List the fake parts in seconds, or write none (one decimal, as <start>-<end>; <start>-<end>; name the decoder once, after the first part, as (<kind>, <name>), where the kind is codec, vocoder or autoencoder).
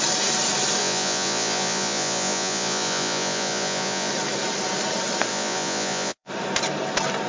0.8-4.1 (vocoder, Vocos); 5.3-6.3